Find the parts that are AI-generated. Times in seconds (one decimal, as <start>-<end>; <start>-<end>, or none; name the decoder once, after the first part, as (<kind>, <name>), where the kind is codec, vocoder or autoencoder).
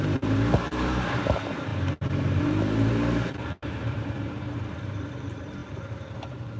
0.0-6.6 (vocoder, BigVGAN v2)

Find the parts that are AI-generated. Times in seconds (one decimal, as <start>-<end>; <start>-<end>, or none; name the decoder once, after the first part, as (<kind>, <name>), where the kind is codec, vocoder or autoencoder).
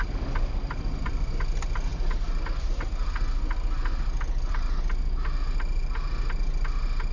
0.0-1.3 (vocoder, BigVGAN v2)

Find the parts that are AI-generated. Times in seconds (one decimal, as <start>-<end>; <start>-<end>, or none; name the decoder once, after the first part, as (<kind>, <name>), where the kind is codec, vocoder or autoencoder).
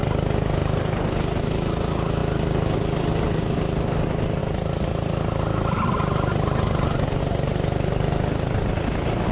0.6-1.1 (vocoder, BigVGAN v2)